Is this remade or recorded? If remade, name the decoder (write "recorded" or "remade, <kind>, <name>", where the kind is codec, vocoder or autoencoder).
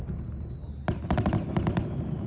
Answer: recorded